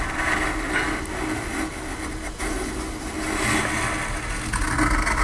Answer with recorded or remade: recorded